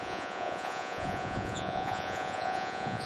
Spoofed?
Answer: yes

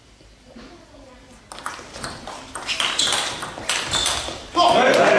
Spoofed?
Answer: no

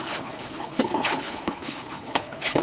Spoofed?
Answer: yes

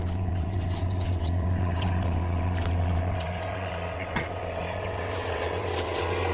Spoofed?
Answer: yes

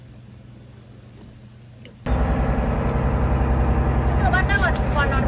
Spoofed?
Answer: no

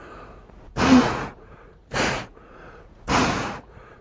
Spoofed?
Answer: yes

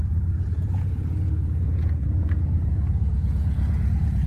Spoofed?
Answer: yes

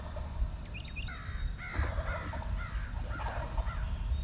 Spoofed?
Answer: no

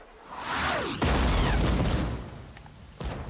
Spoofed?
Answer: no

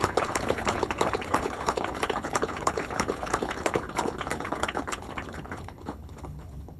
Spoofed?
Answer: yes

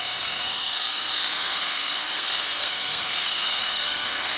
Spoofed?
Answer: yes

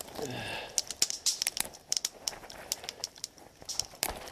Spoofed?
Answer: no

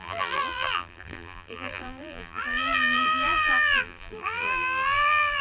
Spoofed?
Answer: yes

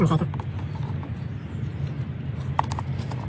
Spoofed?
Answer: no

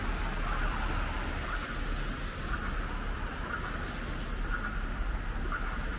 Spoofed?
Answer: no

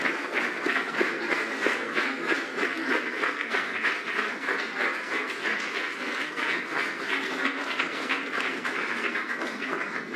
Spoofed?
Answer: yes